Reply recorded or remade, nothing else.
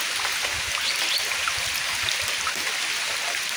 recorded